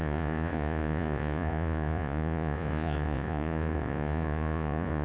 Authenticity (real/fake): fake